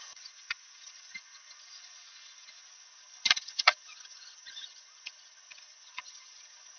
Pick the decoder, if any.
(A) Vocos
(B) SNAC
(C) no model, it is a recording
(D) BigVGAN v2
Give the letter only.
A